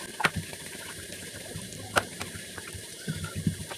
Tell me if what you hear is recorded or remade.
remade